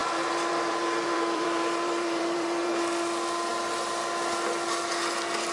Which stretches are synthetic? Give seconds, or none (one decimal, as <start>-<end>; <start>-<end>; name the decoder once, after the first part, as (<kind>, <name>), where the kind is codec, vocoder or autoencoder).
0.0-2.7 (vocoder, BigVGAN v2)